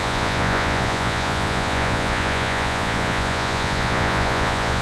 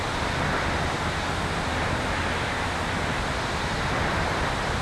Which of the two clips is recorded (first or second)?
second